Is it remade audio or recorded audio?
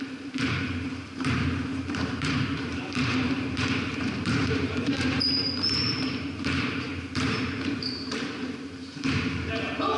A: remade